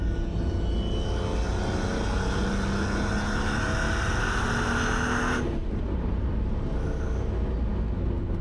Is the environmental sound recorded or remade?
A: recorded